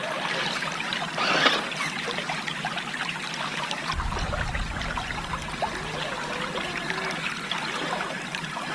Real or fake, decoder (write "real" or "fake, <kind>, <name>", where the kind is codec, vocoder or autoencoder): real